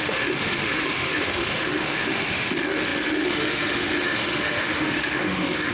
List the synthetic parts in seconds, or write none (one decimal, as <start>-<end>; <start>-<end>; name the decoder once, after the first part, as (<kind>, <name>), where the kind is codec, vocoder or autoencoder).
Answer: 0.0-5.7 (autoencoder, DAC-VAE)